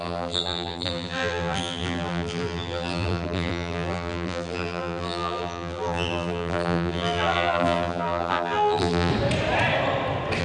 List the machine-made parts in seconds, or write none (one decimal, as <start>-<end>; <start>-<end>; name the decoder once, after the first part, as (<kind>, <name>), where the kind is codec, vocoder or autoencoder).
0.0-9.1 (vocoder, BigVGAN v2)